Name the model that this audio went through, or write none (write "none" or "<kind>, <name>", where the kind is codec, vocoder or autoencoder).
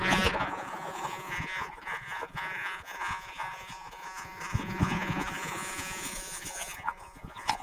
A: vocoder, Vocos